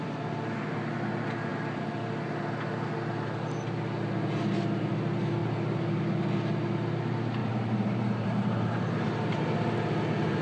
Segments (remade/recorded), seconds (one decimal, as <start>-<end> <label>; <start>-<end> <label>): 0.0-5.4 recorded; 5.4-6.1 remade; 6.1-7.4 recorded; 7.4-8.8 remade; 8.8-10.4 recorded